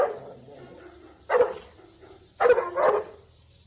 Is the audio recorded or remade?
recorded